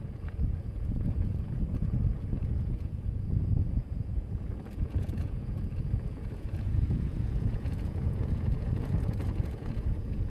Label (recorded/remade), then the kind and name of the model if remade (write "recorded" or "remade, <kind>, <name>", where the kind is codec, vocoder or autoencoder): remade, vocoder, Vocos